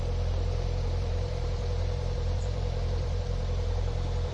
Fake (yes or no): yes